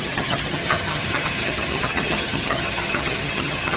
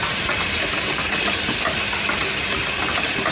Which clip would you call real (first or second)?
second